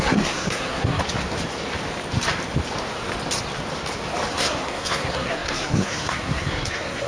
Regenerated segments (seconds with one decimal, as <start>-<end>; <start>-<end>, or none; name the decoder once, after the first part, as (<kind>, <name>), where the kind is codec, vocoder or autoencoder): 0.0-1.0 (codec, SNAC); 4.3-7.1